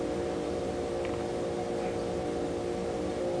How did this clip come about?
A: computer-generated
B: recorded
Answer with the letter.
B